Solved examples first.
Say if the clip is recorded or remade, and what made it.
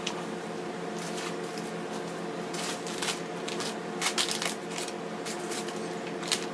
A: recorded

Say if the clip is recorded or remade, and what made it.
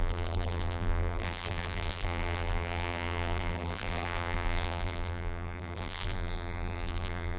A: remade, vocoder, BigVGAN v2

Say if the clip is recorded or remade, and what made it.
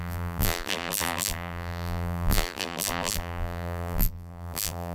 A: remade, vocoder, BigVGAN v2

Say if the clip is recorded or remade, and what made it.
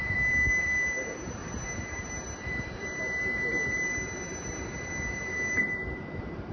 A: remade, vocoder, BigVGAN v2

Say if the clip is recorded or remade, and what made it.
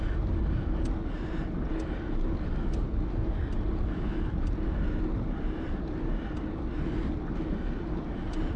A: recorded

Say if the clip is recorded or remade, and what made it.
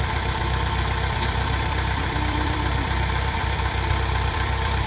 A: remade, vocoder, BigVGAN v2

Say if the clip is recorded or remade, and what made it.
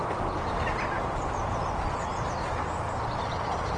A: recorded